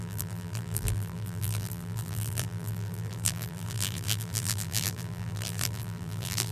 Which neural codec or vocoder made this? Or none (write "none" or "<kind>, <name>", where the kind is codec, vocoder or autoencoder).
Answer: vocoder, BigVGAN v2